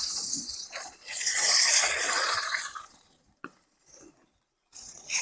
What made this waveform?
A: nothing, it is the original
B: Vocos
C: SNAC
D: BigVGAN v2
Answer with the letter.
B